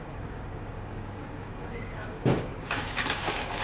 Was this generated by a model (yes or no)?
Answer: yes